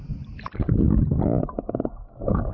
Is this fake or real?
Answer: real